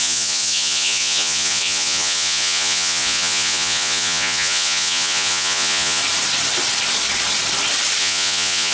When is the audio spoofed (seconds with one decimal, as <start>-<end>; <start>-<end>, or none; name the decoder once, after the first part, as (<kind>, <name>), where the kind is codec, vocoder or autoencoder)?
0.0-6.0 (vocoder, Vocos); 8.0-8.7